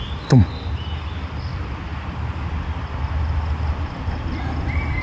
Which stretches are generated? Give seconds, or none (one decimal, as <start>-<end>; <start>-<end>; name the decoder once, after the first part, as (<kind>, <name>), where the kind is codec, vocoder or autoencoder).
none